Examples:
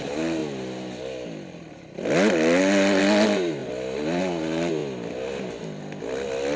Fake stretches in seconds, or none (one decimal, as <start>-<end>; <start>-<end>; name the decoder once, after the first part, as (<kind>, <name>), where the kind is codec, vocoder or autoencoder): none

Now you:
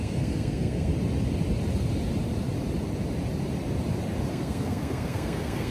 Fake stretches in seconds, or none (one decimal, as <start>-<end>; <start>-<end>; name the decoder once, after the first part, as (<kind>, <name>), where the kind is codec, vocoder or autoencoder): 0.0-0.9 (codec, SNAC); 4.3-5.7

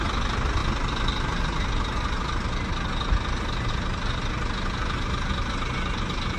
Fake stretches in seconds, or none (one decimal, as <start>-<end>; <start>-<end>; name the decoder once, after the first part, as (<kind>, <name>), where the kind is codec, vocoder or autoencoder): none